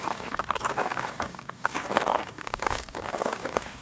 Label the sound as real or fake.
fake